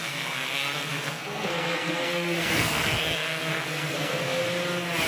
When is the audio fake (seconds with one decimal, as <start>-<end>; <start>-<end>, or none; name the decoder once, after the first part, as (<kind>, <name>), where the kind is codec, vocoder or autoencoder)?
0.0-4.4 (codec, SNAC)

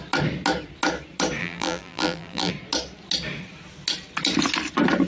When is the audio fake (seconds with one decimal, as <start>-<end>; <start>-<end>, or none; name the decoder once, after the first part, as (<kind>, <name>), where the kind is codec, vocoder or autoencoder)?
1.4-2.5 (vocoder, BigVGAN v2)

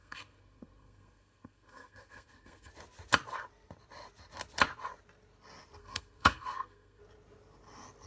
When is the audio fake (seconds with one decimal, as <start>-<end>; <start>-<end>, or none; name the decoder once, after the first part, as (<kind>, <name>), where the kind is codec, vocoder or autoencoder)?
0.0-2.7 (codec, SNAC); 5.8-7.0

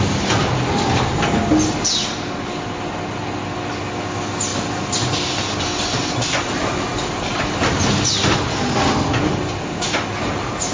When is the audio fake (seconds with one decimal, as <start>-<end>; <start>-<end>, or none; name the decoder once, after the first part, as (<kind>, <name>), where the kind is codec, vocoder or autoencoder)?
none

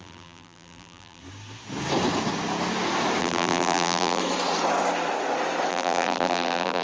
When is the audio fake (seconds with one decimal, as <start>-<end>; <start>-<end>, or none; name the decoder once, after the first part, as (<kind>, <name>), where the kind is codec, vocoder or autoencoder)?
0.0-1.2 (vocoder, BigVGAN v2); 3.2-4.2; 5.7-6.8

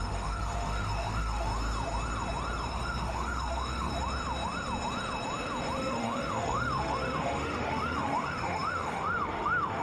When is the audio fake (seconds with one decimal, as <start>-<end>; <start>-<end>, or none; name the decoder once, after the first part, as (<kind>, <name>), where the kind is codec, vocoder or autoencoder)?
0.0-1.5 (autoencoder, DAC-VAE); 2.7-3.9; 5.8-9.8

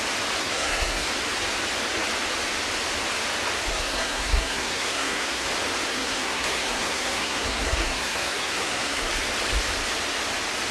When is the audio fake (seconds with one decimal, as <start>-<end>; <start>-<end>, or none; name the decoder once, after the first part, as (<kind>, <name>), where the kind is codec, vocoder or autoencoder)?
0.4-1.1 (codec, SNAC); 3.7-5.5; 5.9-9.1